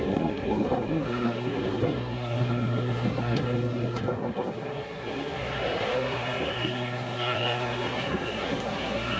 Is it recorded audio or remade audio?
remade